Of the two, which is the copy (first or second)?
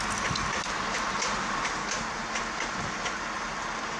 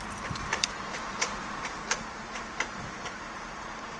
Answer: second